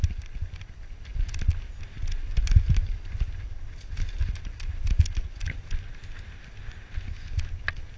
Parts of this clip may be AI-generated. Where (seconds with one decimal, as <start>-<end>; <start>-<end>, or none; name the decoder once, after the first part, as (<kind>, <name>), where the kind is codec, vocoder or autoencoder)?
1.1-5.7 (vocoder, BigVGAN v2)